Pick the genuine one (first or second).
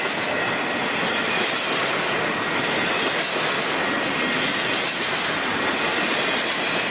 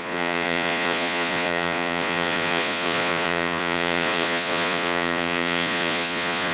first